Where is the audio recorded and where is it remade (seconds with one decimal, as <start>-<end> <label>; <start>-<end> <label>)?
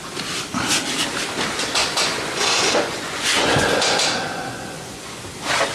0.0-1.8 recorded; 1.8-5.2 remade; 5.2-5.7 recorded